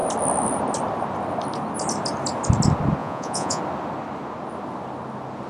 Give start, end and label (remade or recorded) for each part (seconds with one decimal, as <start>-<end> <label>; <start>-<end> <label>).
0.0-3.0 recorded; 3.0-3.6 remade; 3.6-5.5 recorded